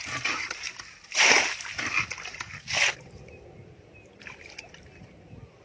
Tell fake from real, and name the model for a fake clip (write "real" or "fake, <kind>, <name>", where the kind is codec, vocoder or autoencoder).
real